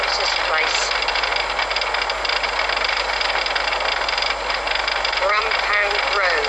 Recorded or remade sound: recorded